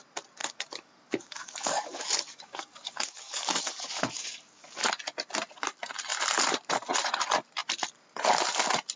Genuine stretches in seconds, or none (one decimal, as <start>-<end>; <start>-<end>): 0.0-0.4; 4.9-9.0